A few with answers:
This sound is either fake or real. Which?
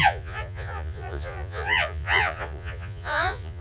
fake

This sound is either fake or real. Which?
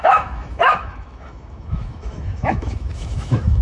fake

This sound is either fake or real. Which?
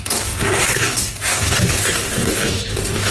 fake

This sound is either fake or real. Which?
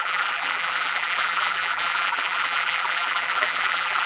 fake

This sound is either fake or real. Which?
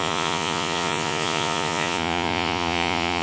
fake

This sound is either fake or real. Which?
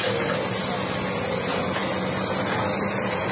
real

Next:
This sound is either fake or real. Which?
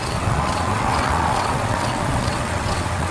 fake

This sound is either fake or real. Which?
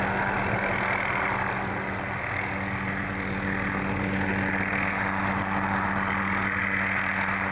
real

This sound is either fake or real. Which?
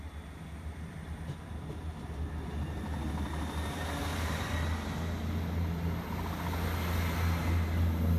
real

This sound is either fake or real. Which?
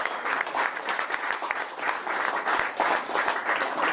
real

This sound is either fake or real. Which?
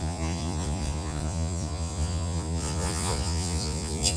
fake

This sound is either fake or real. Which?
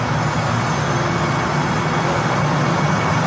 real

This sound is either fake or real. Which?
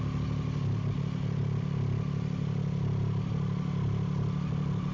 real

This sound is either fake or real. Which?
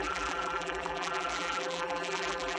fake